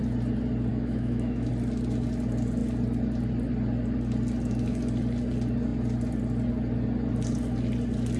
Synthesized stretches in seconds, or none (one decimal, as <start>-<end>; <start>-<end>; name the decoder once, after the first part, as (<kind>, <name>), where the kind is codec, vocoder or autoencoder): 0.7-1.5 (autoencoder, DAC-VAE)